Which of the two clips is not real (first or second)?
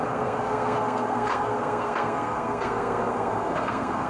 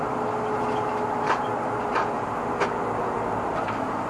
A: first